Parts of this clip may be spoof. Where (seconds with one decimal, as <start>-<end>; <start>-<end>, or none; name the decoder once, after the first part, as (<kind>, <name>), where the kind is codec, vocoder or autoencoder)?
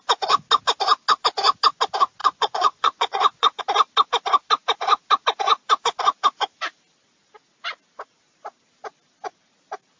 2.2-3.6 (vocoder, Vocos)